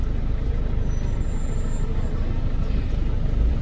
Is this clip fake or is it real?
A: real